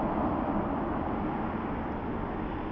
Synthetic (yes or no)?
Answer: no